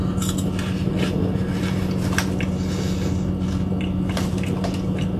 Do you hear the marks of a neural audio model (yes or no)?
no